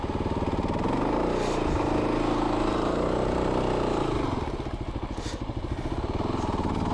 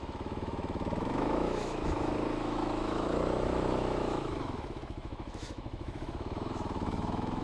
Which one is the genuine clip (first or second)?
first